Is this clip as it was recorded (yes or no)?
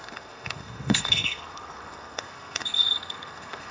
no